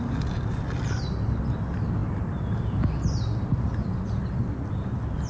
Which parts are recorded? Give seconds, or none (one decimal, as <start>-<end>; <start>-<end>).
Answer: 0.0-5.3